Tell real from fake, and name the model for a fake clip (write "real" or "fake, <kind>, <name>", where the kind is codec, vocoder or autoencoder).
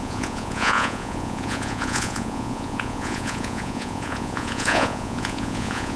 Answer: fake, vocoder, Vocos